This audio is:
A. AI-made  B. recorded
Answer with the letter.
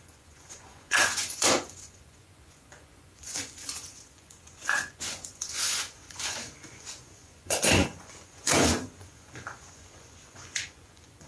A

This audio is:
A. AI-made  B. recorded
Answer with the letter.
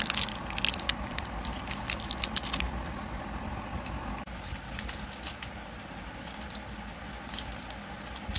B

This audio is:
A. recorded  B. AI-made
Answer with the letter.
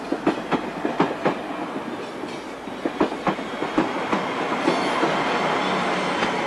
A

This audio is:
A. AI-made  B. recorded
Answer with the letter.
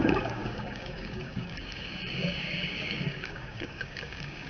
A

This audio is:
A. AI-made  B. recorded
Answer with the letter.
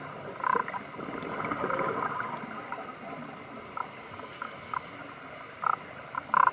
B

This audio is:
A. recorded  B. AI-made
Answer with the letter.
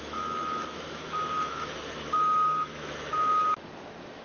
B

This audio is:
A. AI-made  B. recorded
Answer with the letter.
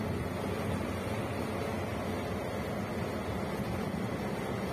B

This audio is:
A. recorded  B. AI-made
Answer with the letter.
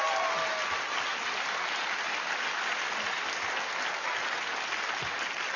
A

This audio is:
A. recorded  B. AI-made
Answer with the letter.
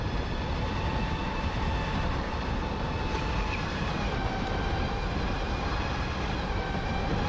A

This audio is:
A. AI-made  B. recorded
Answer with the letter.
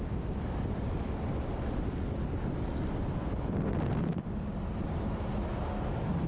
B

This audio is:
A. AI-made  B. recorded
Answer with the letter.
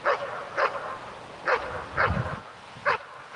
B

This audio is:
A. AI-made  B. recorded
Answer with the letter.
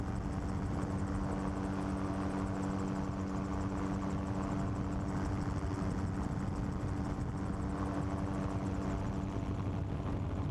B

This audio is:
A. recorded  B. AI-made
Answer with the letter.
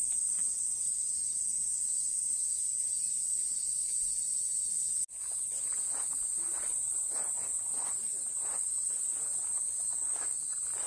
A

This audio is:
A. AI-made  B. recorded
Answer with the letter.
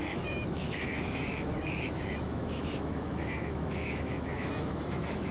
A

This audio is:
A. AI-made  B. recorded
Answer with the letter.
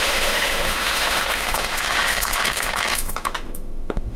A